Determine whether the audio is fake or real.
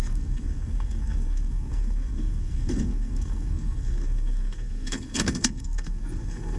fake